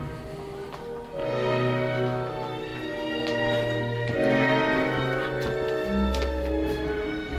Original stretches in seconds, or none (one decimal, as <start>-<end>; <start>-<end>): 0.0-7.4